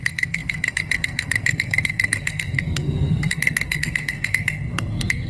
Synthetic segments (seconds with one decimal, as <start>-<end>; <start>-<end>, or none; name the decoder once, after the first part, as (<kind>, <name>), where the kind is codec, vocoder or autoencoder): 0.0-5.3 (codec, SNAC)